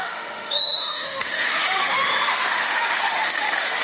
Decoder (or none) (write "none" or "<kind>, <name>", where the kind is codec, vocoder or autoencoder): autoencoder, DAC-VAE